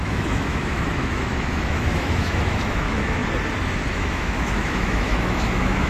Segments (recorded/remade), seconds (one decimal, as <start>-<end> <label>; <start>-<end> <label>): 0.0-3.2 remade; 3.2-3.9 recorded; 3.9-5.9 remade